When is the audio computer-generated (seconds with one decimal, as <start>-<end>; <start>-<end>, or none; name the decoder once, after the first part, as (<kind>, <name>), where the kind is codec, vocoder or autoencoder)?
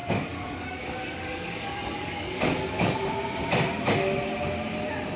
0.0-3.1 (codec, DAC)